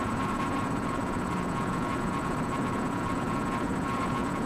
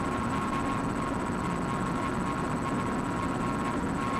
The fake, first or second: first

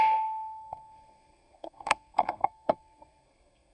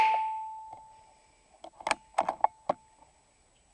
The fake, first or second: first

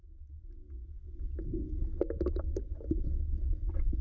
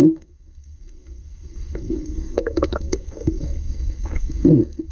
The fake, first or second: second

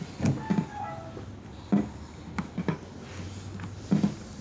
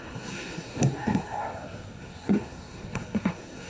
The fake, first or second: second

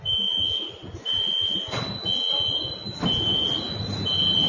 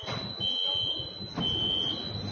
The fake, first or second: first